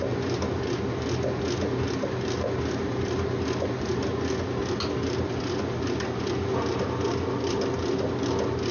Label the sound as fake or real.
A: real